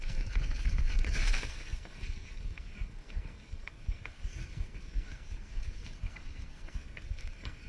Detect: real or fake fake